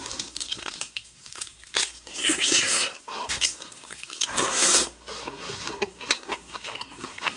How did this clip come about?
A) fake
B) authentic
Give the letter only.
A